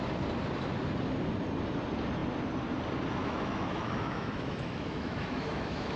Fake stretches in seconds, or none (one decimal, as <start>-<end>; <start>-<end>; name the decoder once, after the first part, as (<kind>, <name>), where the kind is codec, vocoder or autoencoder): 3.2-6.0 (autoencoder, DAC-VAE)